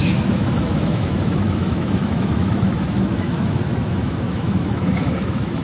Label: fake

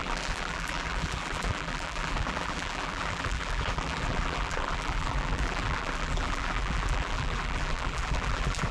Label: fake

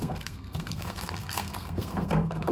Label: fake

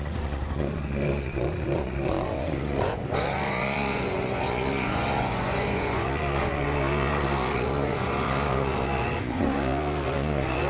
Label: fake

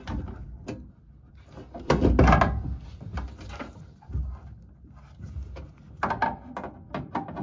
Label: real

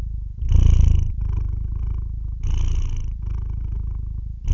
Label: real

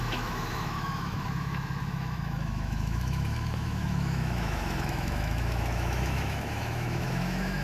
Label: fake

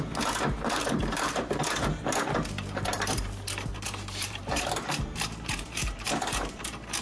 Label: fake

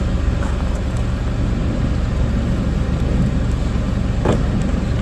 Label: real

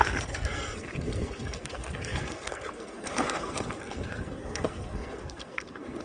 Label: fake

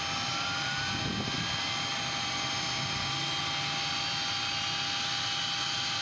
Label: real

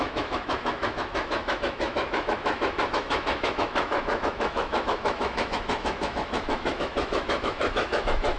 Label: fake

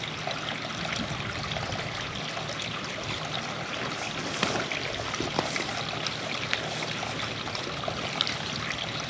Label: real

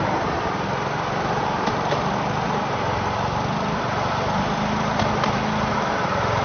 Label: real